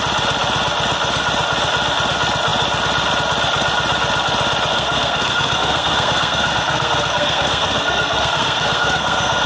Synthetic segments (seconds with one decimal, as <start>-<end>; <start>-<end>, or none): 4.7-9.5